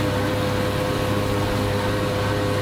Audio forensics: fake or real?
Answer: real